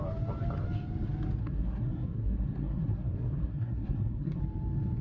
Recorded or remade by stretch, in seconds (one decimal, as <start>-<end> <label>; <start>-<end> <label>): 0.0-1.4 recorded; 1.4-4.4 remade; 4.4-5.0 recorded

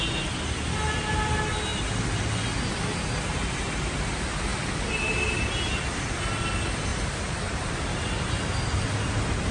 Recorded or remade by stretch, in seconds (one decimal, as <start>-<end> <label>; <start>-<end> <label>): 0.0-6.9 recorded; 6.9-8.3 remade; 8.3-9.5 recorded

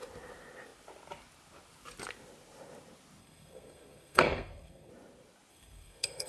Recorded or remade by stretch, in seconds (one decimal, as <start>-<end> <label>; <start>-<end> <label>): 0.0-3.2 recorded; 3.2-4.9 remade; 4.9-5.5 recorded; 5.5-6.3 remade